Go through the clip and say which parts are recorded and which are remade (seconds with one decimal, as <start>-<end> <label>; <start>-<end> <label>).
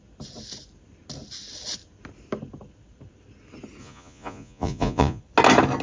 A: 0.0-3.8 recorded; 3.8-5.2 remade; 5.2-5.8 recorded